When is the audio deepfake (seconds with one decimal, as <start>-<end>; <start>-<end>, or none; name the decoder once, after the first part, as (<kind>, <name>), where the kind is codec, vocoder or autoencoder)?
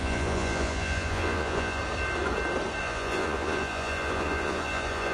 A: 0.0-1.8 (vocoder, Vocos); 2.8-5.1